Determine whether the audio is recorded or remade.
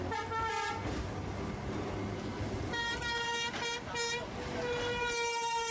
recorded